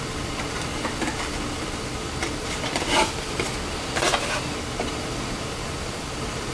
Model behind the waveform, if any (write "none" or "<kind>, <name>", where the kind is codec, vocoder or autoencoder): none